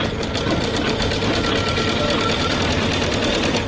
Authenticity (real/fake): real